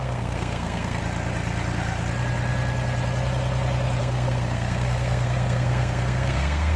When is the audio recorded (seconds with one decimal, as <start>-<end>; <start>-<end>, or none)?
1.0-4.0